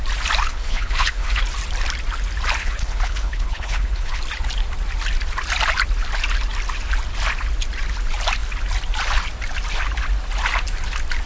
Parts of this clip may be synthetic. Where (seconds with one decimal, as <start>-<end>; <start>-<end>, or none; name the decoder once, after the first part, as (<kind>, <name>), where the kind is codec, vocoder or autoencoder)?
0.5-1.4 (codec, HILCodec); 2.6-4.2